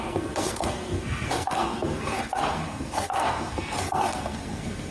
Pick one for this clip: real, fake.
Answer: fake